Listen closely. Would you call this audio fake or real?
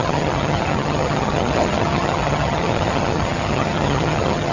fake